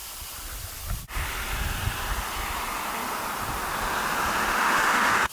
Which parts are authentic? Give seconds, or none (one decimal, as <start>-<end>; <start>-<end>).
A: 0.0-4.4